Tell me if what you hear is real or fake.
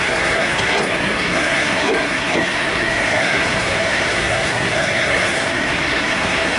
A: fake